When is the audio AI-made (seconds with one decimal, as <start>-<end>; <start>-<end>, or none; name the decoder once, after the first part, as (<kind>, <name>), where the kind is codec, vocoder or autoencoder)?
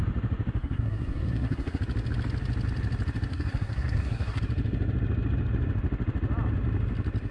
0.6-1.8 (codec, SNAC); 3.3-4.4